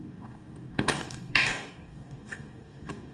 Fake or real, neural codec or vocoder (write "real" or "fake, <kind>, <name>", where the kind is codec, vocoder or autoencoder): fake, codec, DAC